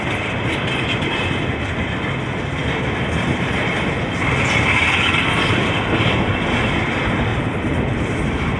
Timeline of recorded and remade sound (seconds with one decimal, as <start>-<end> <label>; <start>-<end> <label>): 0.0-7.3 recorded; 7.3-8.2 remade; 8.2-8.6 recorded